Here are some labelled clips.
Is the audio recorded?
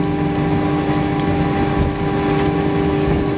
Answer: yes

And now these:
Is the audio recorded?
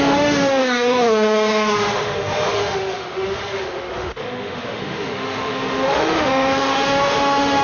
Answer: no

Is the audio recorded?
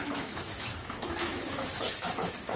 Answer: no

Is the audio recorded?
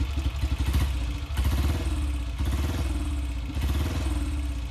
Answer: yes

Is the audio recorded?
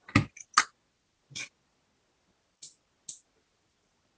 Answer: yes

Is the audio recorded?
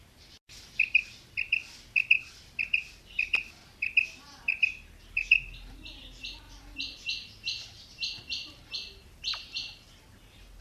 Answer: yes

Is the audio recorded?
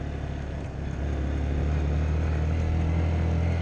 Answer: yes